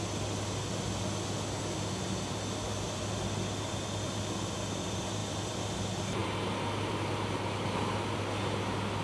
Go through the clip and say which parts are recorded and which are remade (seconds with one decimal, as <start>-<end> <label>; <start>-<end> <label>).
0.0-9.0 recorded